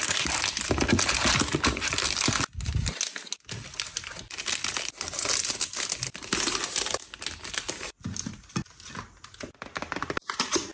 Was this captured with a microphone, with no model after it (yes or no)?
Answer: yes